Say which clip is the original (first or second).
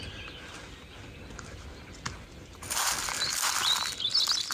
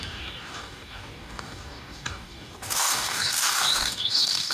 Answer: first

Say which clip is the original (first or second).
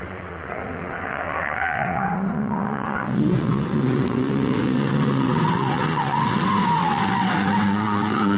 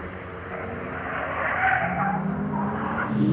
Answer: second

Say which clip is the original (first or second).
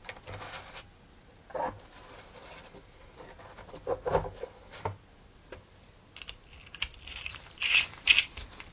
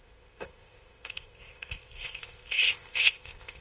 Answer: first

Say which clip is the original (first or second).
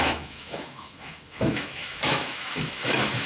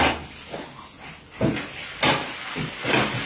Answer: second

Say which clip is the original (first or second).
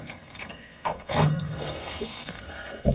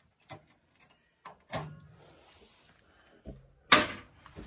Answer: second